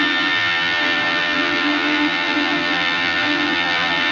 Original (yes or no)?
no